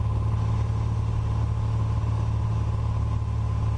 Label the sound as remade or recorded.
recorded